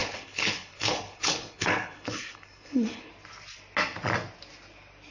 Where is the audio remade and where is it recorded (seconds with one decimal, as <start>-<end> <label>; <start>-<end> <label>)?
0.0-3.1 remade; 3.1-5.1 recorded